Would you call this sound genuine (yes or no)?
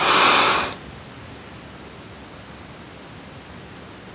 yes